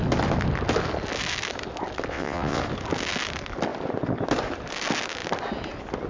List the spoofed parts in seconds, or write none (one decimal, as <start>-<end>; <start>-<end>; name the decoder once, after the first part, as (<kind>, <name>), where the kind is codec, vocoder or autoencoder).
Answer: 2.1-2.6 (vocoder, WaveNeXt)